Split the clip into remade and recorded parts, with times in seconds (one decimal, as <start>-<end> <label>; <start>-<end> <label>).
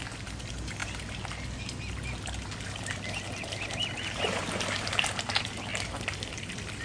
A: 0.0-6.8 recorded